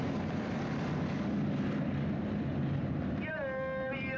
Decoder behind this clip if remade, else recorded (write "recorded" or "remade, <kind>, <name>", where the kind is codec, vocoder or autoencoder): recorded